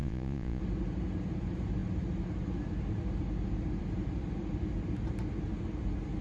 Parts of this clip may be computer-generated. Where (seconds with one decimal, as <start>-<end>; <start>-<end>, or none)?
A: 0.0-0.6